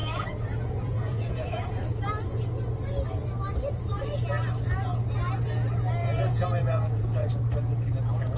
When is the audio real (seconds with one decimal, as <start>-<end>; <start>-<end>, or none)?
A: 2.0-6.0; 7.3-8.4